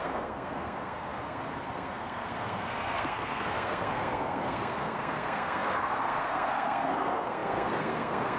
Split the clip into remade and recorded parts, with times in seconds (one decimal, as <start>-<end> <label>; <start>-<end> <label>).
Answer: 0.0-8.4 remade